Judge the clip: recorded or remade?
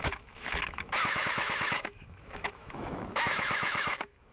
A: remade